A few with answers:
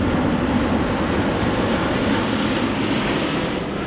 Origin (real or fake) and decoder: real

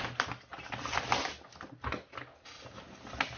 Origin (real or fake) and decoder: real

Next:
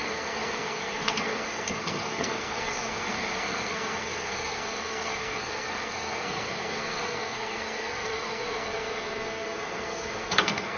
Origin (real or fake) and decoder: fake, codec, SNAC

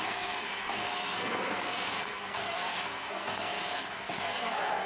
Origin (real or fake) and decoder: fake, codec, SNAC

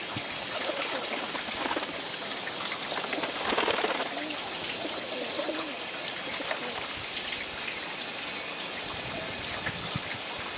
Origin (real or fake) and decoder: real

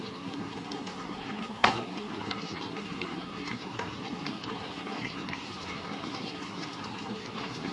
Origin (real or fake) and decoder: fake, codec, SNAC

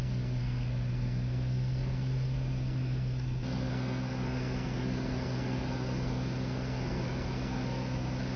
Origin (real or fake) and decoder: fake, codec, SNAC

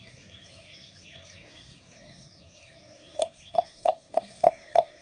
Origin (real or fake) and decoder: fake, codec, SNAC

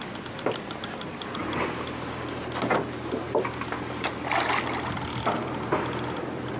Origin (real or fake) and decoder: real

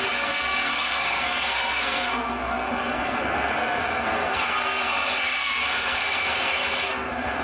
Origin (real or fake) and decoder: fake, codec, SNAC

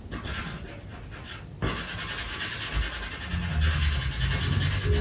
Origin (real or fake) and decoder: real